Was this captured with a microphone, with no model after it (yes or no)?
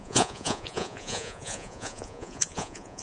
no